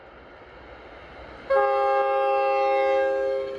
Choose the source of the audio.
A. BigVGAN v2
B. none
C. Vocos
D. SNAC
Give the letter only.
B